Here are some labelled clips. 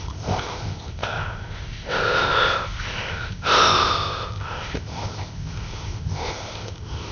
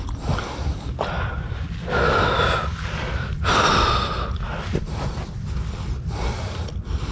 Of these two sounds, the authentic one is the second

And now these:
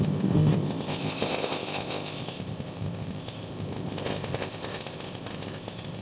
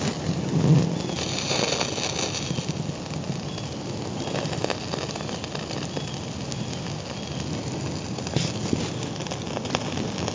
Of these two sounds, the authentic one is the second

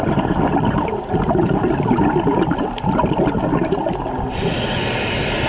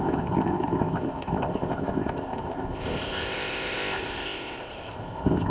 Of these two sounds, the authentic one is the first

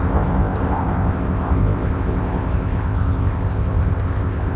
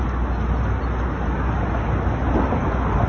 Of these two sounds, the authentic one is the second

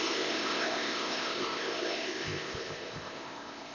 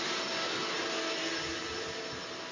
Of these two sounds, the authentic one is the second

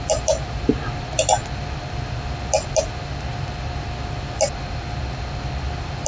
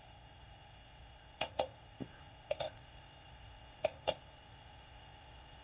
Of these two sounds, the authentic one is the first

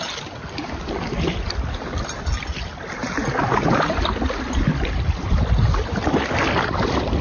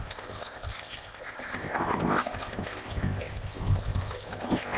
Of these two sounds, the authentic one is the first